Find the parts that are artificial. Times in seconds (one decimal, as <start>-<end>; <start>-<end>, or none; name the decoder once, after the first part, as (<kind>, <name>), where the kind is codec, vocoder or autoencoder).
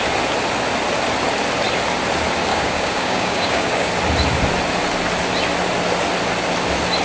2.5-3.9 (codec, DAC)